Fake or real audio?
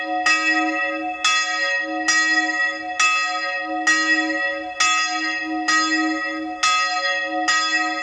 real